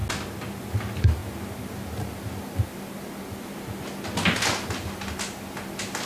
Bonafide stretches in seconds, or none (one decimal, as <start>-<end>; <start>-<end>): 0.0-6.0